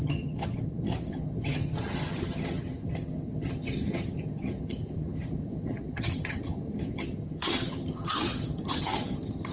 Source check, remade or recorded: remade